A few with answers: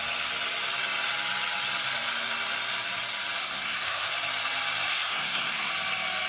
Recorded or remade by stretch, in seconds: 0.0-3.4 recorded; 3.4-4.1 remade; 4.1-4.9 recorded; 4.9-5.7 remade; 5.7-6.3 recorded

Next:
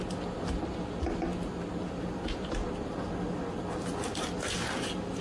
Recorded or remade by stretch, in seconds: 0.0-5.2 recorded